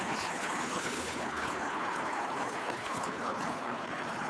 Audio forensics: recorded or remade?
remade